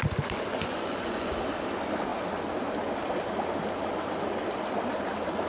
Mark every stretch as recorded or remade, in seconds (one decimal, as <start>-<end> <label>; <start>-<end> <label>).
0.0-0.5 recorded; 0.5-1.3 remade; 1.3-5.5 recorded